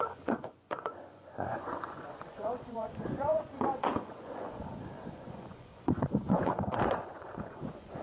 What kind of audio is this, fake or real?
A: fake